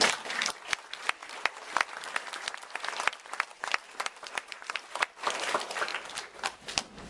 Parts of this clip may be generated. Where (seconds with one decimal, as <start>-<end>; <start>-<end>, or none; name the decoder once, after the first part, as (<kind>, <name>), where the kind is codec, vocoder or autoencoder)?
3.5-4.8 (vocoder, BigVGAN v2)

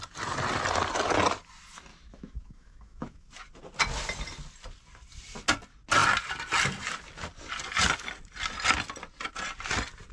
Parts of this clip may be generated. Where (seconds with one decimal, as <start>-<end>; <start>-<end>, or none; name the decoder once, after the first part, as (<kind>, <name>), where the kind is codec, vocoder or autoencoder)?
1.9-3.3 (autoencoder, DAC-VAE)

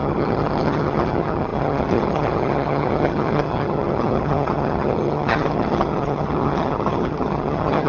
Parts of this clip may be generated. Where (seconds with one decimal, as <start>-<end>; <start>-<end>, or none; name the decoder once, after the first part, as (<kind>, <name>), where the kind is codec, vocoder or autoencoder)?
0.0-7.9 (vocoder, HiFi-GAN)

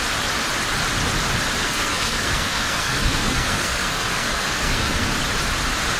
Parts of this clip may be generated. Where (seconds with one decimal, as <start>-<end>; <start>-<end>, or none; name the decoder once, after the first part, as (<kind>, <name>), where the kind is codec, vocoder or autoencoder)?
1.6-5.2 (codec, SNAC)

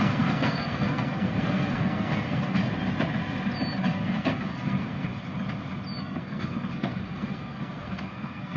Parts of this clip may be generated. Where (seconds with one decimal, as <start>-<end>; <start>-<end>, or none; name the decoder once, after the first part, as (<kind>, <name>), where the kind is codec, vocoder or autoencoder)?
0.0-2.6 (codec, SNAC); 3.8-5.1; 6.0-8.6

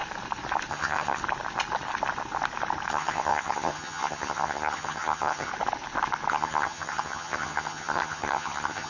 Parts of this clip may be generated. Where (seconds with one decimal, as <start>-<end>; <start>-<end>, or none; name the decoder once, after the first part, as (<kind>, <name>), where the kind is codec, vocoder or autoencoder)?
0.7-1.2 (vocoder, HiFi-GAN); 2.9-5.5; 6.3-8.9

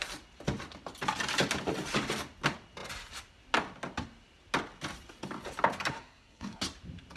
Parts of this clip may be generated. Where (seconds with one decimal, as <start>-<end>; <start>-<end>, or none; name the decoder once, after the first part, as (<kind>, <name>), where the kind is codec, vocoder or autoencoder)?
5.9-6.6 (codec, SNAC)